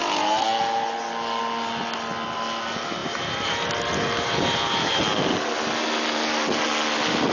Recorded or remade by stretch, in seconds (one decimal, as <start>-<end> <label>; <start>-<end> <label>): 0.0-3.0 recorded; 3.0-5.0 remade; 5.0-7.3 recorded